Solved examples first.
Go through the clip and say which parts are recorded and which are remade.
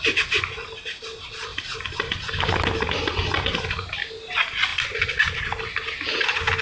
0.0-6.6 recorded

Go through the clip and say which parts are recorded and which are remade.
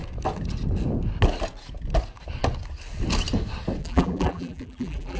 0.0-3.8 recorded; 3.8-5.2 remade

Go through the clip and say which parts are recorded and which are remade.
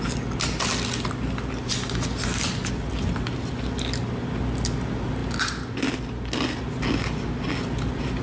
0.0-8.2 recorded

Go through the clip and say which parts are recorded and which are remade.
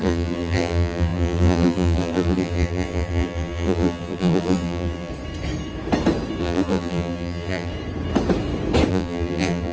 0.0-5.1 remade; 5.1-6.4 recorded; 6.4-7.7 remade; 7.7-8.9 recorded; 8.9-9.7 remade